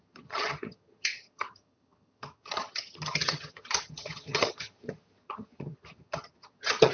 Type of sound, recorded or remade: remade